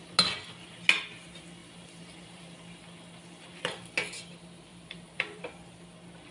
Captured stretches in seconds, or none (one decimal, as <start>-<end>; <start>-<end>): 0.0-1.6; 2.4-4.7; 5.4-6.3